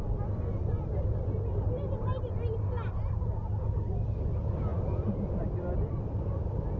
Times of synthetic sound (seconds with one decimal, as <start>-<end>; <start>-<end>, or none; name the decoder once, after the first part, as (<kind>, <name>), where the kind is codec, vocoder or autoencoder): none